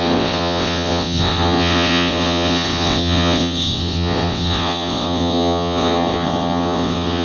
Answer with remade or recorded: remade